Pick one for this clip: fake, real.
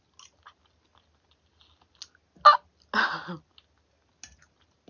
real